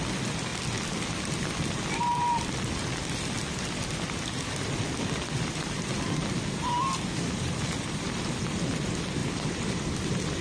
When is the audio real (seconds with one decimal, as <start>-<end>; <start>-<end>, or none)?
0.0-10.4